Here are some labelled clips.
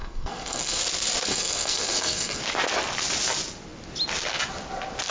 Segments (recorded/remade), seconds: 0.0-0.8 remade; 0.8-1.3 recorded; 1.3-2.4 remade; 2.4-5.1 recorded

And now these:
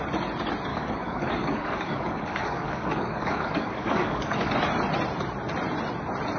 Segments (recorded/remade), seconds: 0.0-0.7 recorded; 0.7-4.5 remade; 4.5-6.4 recorded

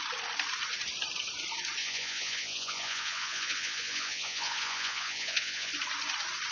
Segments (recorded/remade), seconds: 0.0-1.8 recorded; 1.8-5.7 remade; 5.7-6.5 recorded